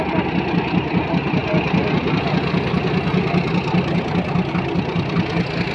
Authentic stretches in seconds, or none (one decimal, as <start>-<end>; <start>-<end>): 0.0-5.7